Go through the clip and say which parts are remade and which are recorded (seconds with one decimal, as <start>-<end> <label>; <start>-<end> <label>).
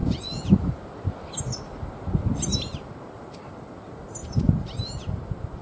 0.0-0.8 remade; 0.8-5.6 recorded